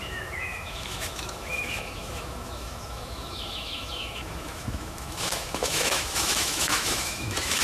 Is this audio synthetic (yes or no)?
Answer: yes